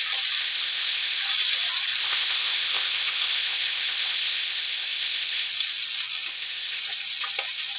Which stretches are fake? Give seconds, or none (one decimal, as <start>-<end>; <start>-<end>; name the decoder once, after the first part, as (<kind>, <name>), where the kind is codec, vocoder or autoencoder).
0.4-1.2 (codec, ZipCodec); 2.0-5.5; 6.3-6.8